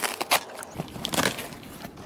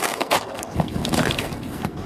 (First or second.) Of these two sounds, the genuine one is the first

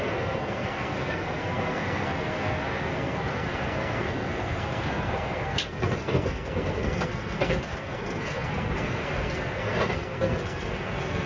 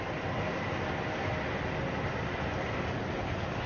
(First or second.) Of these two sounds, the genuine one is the second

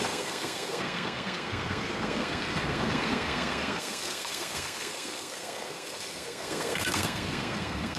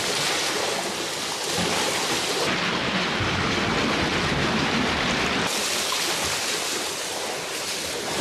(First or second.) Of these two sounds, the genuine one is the second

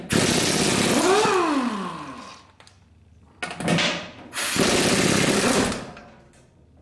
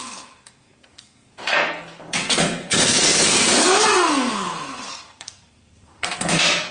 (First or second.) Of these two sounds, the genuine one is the first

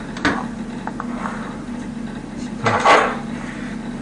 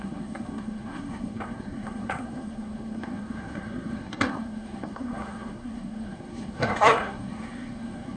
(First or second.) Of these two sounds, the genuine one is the first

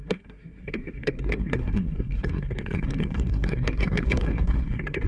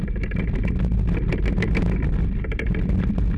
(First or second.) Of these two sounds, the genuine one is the second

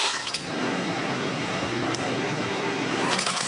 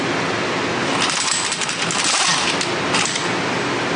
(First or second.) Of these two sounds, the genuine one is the second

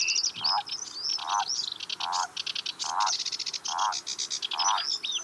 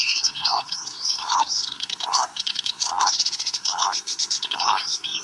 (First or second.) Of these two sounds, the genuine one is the first